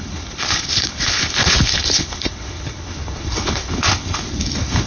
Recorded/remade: remade